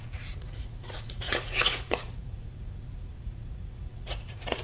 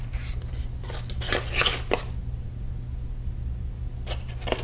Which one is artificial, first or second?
first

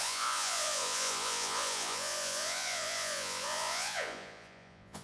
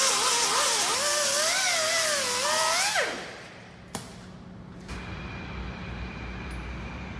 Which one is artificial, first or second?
first